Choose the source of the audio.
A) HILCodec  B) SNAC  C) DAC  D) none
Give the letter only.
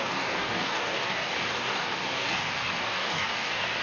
C